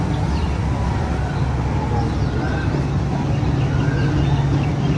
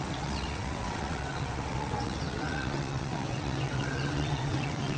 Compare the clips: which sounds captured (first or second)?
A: first